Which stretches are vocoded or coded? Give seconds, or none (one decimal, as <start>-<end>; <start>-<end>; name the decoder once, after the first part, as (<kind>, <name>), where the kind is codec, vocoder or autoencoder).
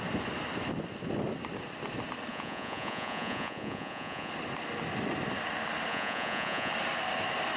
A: 2.3-4.3 (vocoder, Vocos); 5.9-6.7